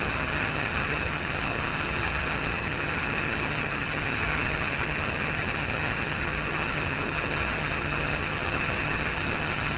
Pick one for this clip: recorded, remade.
remade